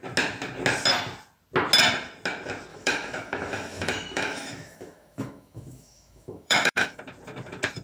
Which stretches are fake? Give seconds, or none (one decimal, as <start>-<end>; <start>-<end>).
2.7-7.0